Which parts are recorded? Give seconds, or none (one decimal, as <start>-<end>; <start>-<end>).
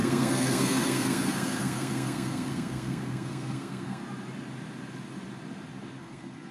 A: 4.0-6.0